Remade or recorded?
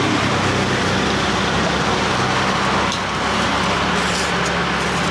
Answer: recorded